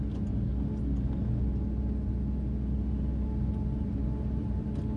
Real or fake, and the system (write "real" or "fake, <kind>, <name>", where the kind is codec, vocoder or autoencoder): real